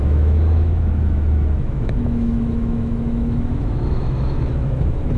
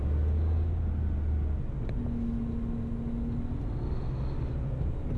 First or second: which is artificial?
first